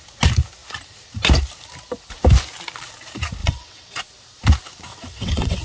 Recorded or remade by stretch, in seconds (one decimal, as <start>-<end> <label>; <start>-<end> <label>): 0.0-3.4 recorded; 3.4-4.0 remade; 4.0-4.9 recorded; 4.9-5.6 remade